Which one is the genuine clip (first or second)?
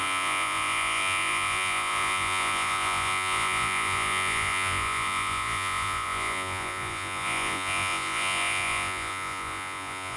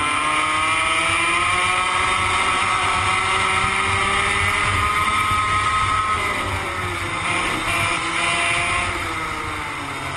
second